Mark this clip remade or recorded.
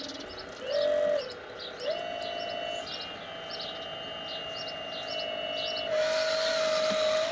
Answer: recorded